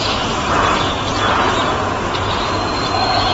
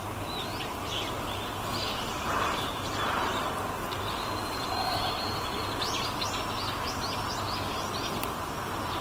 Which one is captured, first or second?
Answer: second